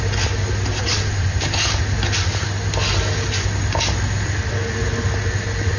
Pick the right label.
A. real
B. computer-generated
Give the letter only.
A